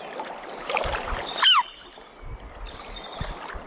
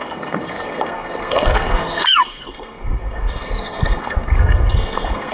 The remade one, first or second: second